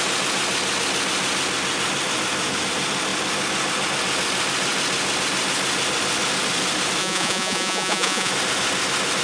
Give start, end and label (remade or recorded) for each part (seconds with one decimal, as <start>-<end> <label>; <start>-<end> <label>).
0.0-7.0 recorded; 7.0-8.3 remade; 8.3-9.2 recorded